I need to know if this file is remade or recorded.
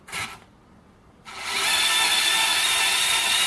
recorded